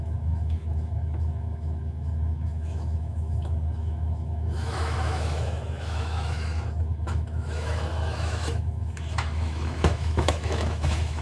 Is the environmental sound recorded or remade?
remade